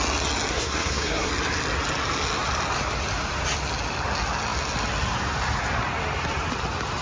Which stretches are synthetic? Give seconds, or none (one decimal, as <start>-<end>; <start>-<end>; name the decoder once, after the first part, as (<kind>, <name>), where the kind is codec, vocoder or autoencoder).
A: 0.5-1.3 (codec, SNAC)